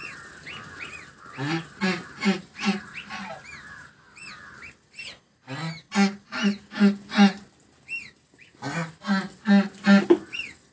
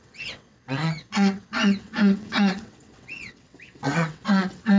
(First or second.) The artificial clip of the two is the second